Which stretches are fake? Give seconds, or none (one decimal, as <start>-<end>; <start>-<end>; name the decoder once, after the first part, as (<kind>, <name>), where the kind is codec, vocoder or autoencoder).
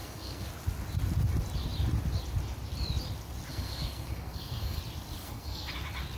0.0-0.5 (codec, SNAC); 3.5-4.8; 5.2-5.7